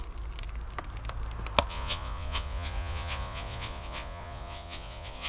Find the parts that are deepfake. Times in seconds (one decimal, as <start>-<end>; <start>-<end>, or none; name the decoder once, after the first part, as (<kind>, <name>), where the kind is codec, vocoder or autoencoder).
1.7-5.3 (vocoder, Vocos)

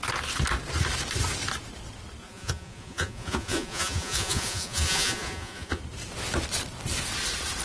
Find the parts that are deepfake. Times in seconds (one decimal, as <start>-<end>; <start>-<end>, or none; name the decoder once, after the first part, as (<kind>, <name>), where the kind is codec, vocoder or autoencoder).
2.2-5.8 (vocoder, Vocos)

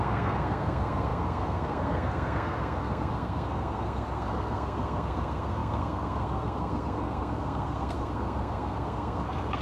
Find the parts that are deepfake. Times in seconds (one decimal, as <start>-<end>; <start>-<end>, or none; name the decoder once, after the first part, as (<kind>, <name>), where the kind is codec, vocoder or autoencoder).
0.0-9.6 (codec, SNAC)